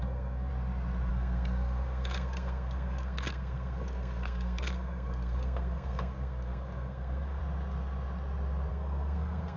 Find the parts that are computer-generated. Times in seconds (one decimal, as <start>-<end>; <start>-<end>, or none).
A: 0.0-0.5; 1.1-7.4; 8.7-9.6

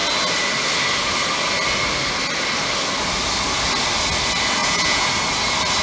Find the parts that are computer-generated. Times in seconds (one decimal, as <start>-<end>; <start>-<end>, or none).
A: 4.6-5.1

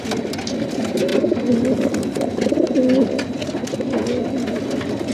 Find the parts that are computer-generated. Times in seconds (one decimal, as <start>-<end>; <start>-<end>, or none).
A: none

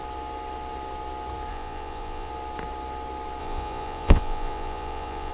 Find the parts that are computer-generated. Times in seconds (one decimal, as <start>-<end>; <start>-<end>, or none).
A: 1.5-2.3; 3.4-5.3